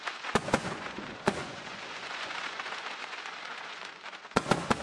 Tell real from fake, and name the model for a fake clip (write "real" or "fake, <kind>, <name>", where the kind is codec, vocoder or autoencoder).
fake, vocoder, Vocos